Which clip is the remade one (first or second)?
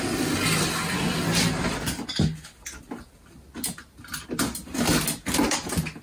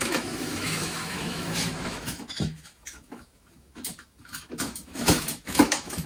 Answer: second